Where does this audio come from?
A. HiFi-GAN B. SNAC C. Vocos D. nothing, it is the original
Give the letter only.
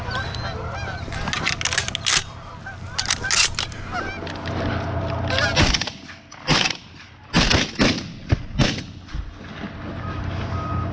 D